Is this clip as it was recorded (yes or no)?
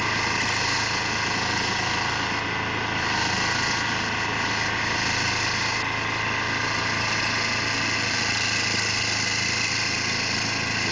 yes